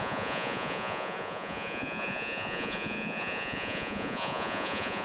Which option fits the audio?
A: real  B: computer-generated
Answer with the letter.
B